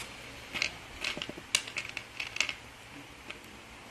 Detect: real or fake real